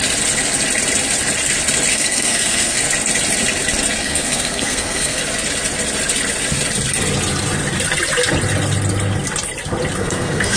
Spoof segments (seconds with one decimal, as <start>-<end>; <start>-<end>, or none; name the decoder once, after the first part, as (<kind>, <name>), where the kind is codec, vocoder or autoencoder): 1.9-2.8 (codec, SNAC); 4.0-5.2; 10.0-10.6